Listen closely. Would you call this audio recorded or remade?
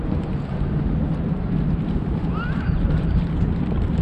remade